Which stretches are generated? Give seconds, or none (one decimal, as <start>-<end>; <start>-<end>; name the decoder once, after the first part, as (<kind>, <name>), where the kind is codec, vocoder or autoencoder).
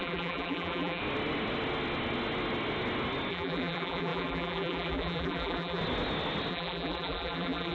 0.0-1.0 (vocoder, BigVGAN v2); 3.3-5.8; 6.5-7.7